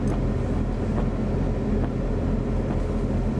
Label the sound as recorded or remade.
recorded